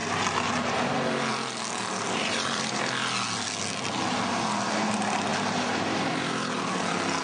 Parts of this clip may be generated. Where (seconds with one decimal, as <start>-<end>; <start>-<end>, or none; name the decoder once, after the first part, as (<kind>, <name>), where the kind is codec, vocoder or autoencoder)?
1.3-3.6 (vocoder, BigVGAN v2)